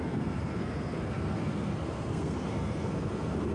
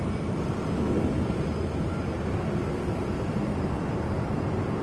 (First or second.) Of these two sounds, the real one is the second